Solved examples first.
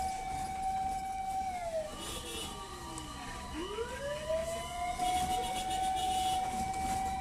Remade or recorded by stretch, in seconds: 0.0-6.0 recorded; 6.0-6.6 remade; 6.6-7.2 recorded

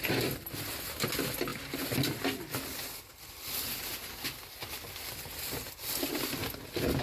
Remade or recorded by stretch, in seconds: 0.0-7.0 recorded

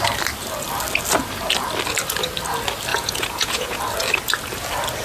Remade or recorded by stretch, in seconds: 0.0-2.9 recorded; 2.9-3.8 remade; 3.8-5.0 recorded

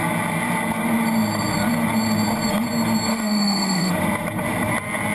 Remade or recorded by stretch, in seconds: 0.0-3.1 recorded; 3.1-3.9 remade; 3.9-5.1 recorded

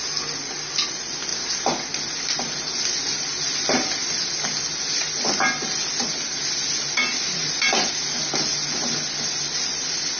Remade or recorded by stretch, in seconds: 0.0-10.2 recorded

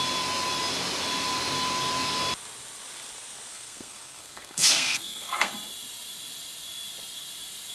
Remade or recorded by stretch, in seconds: 0.0-3.5 recorded; 3.5-5.5 remade; 5.5-7.7 recorded

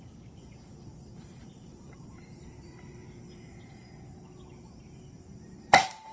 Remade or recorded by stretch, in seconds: 0.0-3.8 remade; 3.8-4.5 recorded; 4.5-6.1 remade

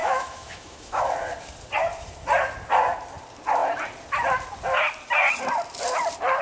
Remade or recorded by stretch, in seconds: 0.0-1.0 remade; 1.0-6.4 recorded